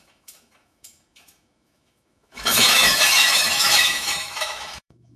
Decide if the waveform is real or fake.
fake